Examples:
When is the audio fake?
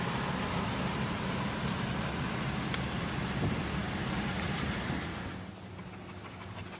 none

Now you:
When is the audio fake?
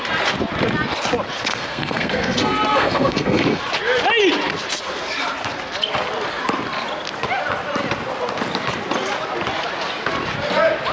1.5-3.6 (codec, SNAC)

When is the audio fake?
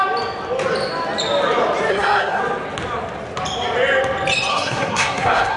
1.9-2.4 (codec, SNAC); 4.5-5.6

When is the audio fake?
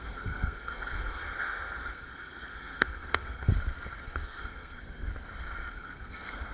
0.0-3.5 (codec, SNAC); 4.0-5.1; 5.7-6.5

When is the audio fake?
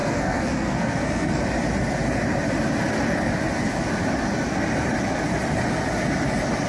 0.0-1.4 (codec, SNAC)